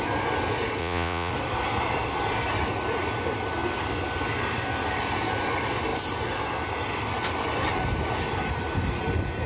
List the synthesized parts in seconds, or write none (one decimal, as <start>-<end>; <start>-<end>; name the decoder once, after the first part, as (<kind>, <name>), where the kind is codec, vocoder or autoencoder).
0.8-1.3 (vocoder, Vocos)